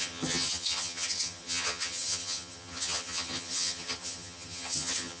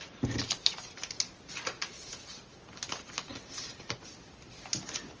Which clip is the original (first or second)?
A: second